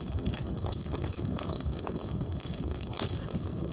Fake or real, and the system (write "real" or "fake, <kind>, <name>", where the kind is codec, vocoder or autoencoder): fake, codec, SNAC